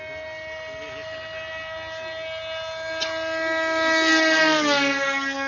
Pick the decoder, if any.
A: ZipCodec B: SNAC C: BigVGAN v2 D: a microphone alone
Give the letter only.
D